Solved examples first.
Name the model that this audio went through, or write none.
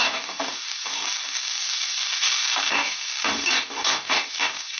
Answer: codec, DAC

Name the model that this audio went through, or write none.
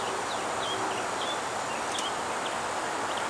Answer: none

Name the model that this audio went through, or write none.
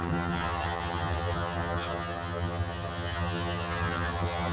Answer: vocoder, HiFi-GAN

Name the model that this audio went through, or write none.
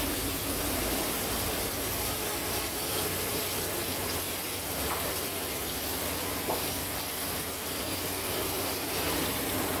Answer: none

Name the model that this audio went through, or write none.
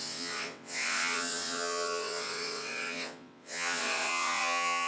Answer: vocoder, WaveNeXt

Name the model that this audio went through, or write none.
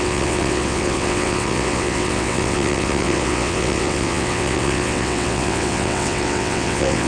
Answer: vocoder, WaveNeXt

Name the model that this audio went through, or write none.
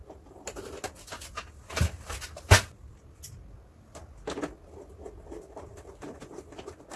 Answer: none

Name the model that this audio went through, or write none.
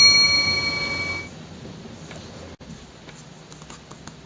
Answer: none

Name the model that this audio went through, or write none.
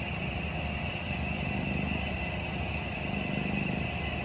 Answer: none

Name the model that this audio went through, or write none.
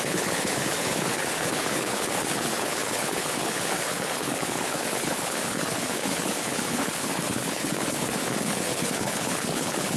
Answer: codec, HILCodec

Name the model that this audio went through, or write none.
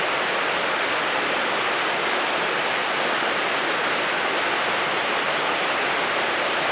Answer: none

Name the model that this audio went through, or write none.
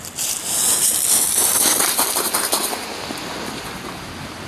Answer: none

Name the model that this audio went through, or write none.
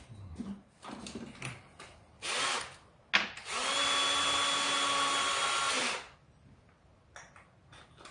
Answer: none